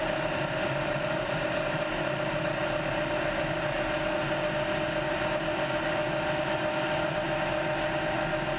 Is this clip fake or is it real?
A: real